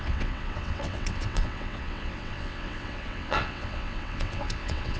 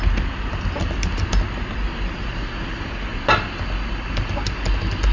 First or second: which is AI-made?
first